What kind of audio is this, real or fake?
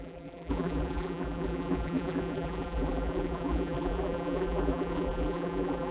fake